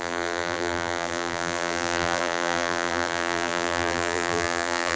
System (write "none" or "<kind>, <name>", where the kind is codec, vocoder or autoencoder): vocoder, BigVGAN v2